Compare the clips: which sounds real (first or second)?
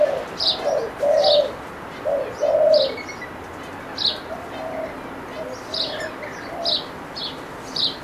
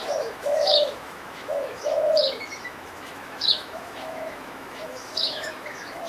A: first